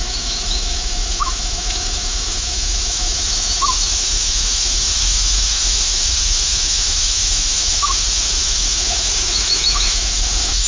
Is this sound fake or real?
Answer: fake